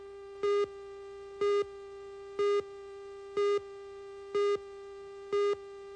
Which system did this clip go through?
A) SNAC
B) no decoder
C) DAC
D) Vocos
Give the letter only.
B